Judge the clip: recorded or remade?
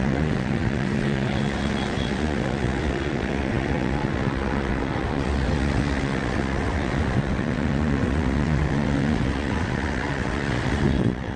remade